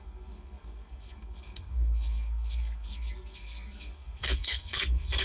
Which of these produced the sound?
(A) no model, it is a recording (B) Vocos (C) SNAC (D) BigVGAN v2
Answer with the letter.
C